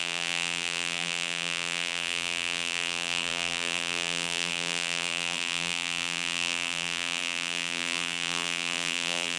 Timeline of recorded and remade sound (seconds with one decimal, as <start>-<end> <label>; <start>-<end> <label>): 0.0-9.4 remade